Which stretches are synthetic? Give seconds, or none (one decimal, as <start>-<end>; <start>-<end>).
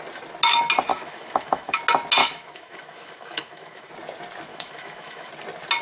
0.9-1.8; 2.2-3.9; 4.5-5.3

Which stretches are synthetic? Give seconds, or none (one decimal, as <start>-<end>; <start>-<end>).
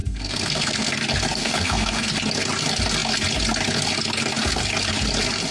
0.0-0.9; 1.4-2.1